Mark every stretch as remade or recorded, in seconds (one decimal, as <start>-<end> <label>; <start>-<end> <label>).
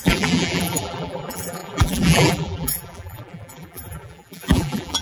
0.0-5.0 remade